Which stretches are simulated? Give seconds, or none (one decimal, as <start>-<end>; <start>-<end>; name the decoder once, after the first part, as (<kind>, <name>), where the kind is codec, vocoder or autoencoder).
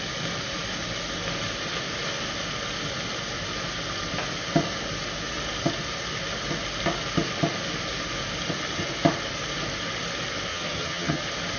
10.5-11.2 (vocoder, HiFi-GAN)